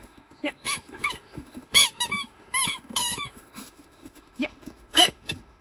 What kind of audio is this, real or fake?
fake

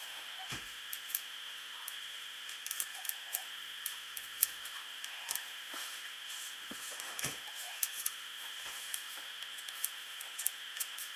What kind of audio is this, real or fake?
fake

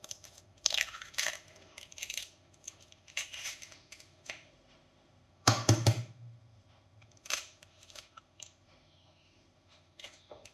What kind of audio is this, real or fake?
fake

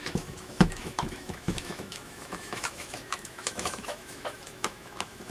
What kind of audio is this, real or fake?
fake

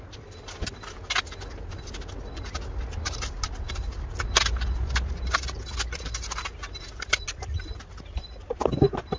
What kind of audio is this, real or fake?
real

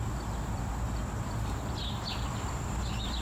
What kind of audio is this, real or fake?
real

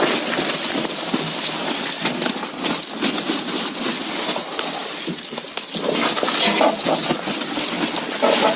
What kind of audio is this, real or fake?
real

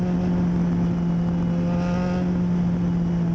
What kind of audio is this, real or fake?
real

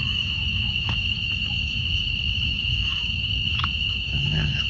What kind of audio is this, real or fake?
fake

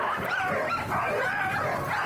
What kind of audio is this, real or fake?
real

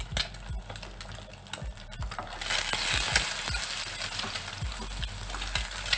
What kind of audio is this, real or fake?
real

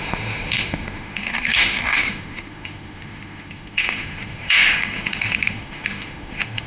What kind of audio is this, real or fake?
fake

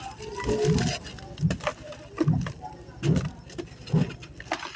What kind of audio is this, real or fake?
real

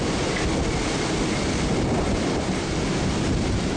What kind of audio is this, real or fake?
real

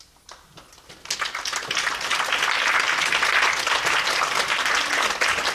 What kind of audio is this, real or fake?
real